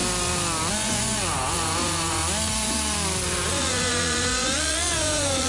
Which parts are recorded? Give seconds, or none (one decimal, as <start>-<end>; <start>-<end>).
0.0-0.7; 2.2-3.5